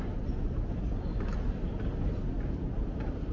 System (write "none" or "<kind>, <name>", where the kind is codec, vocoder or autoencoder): none